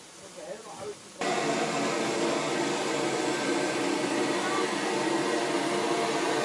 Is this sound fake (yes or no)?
no